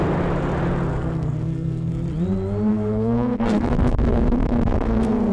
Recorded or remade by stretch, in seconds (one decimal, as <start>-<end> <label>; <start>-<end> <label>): 0.0-0.9 recorded; 0.9-1.9 remade; 1.9-2.7 recorded; 2.7-5.3 remade